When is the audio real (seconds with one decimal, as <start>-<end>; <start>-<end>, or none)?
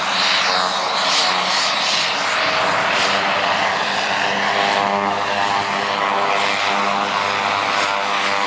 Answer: 0.0-4.9; 5.5-8.5